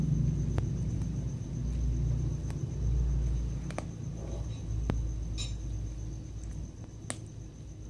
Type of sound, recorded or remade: recorded